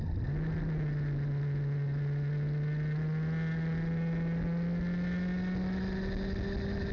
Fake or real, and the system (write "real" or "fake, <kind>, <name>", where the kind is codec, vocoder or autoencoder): real